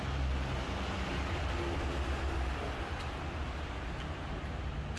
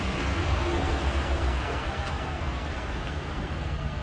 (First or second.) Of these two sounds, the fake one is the second